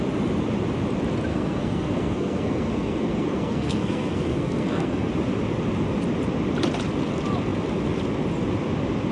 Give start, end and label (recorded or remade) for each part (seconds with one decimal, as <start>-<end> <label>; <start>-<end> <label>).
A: 0.0-1.3 recorded; 1.3-5.1 remade; 5.1-9.1 recorded